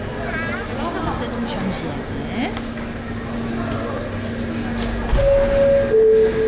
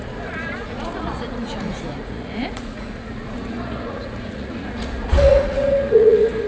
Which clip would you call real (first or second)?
first